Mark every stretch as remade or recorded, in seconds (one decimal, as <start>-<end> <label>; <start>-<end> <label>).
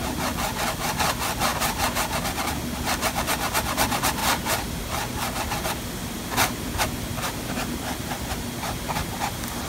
0.0-9.7 recorded